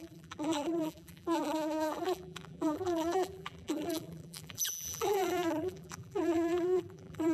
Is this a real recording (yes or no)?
no